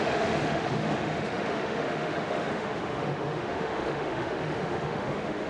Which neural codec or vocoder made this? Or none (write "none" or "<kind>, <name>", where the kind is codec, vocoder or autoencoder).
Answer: autoencoder, DAC-VAE